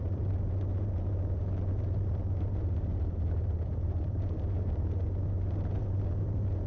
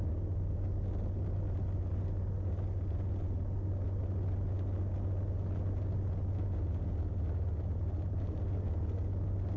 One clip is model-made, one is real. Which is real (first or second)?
second